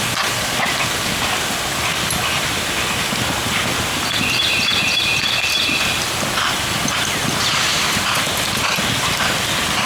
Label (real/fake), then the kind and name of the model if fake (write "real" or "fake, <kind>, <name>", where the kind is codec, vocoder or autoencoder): real